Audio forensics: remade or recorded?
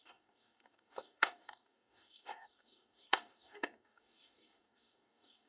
remade